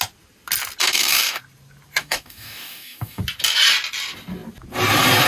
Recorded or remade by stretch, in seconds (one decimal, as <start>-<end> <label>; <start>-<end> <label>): 0.0-0.8 recorded; 0.8-1.4 remade; 1.4-2.0 recorded; 2.0-3.2 remade; 3.2-5.3 recorded